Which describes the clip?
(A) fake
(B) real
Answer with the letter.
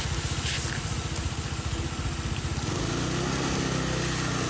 B